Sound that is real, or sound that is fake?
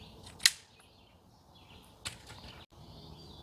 real